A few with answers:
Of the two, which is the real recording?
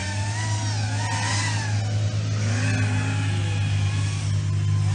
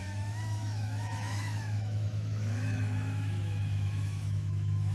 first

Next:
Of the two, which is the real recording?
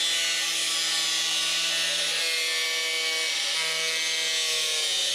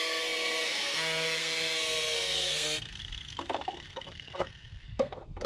first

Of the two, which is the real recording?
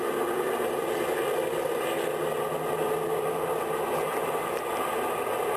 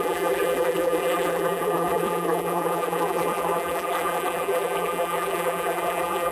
first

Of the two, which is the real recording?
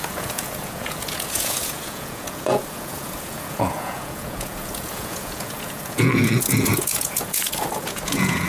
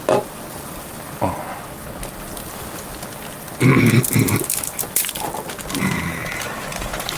second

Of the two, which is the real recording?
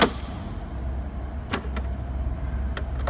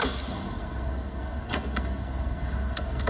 first